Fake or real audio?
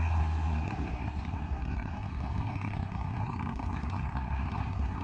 fake